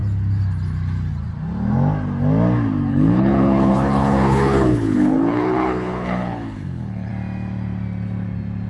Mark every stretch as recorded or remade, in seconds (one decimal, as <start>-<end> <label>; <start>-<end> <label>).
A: 0.0-2.9 recorded; 2.9-7.1 remade; 7.1-8.7 recorded